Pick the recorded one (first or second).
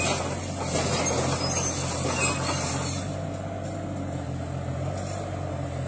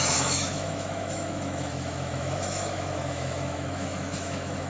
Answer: first